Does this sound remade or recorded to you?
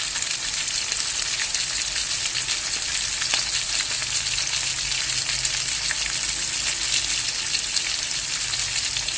recorded